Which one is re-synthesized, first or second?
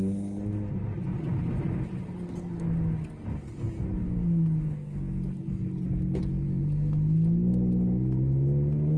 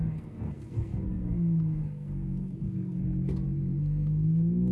second